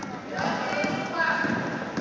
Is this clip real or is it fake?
real